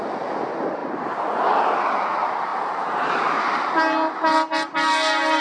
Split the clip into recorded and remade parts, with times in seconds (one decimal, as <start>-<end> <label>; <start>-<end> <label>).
0.0-2.5 recorded; 2.5-5.4 remade